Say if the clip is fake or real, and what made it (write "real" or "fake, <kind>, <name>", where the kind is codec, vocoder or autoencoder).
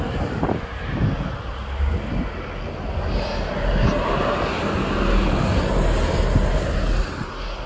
real